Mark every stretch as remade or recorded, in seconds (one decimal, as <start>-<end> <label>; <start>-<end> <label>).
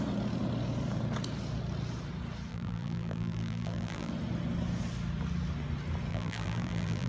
0.0-2.5 recorded; 2.5-4.1 remade; 4.1-6.1 recorded; 6.1-7.1 remade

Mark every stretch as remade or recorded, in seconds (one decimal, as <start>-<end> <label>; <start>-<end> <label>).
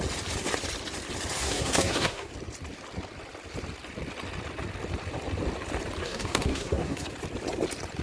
0.0-1.4 recorded; 1.4-2.3 remade; 2.3-6.0 recorded; 6.0-7.1 remade; 7.1-8.0 recorded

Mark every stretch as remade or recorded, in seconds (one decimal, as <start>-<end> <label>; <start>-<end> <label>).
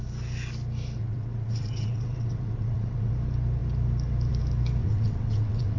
0.0-1.0 recorded; 1.0-3.1 remade; 3.1-4.8 recorded; 4.8-5.8 remade